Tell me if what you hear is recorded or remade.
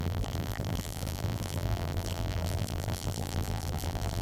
remade